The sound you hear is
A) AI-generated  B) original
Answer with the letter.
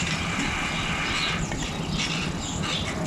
B